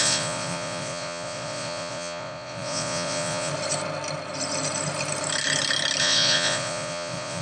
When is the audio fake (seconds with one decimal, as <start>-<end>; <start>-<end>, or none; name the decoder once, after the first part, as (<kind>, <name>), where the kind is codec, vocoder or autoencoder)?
0.0-3.5 (vocoder, Vocos); 6.0-7.4

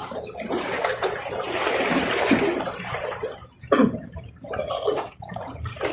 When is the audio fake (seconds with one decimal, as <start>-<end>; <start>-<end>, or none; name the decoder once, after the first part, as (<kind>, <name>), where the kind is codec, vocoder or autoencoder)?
0.0-5.9 (vocoder, BigVGAN v2)

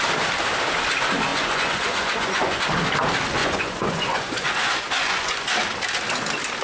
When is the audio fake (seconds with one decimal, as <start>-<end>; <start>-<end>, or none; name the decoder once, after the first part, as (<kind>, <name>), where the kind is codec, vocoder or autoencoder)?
1.3-2.6 (vocoder, Vocos); 3.4-5.5

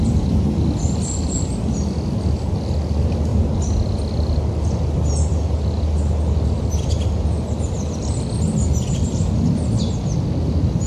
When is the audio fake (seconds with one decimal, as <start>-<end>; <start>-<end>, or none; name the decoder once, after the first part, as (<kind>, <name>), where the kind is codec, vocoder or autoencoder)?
none

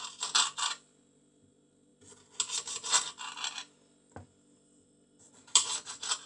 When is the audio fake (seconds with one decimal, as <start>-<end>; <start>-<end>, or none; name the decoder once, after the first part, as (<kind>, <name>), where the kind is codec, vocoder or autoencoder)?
none

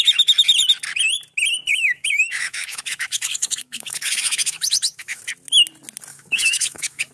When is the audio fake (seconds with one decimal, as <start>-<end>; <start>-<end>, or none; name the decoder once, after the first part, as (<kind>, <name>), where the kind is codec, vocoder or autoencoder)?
1.7-5.2 (autoencoder, DAC-VAE); 6.1-7.1